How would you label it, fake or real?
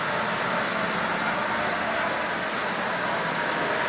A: real